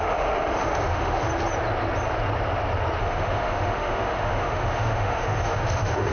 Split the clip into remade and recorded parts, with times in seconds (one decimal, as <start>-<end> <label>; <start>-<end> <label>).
0.0-1.3 remade; 1.3-3.0 recorded; 3.0-6.1 remade